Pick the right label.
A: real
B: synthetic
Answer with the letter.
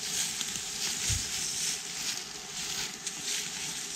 A